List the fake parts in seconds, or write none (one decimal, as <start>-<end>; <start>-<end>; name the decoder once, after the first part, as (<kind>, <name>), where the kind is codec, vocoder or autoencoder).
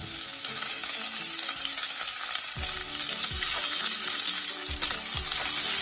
0.0-2.3 (autoencoder, DAC-VAE); 2.8-4.7